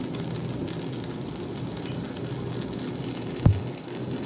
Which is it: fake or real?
real